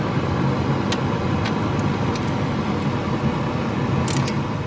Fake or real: real